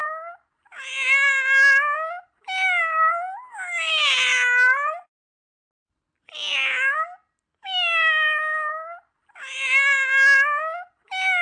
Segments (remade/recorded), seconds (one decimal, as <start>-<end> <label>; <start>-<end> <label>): 0.0-11.4 recorded